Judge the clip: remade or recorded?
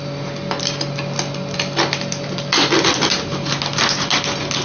recorded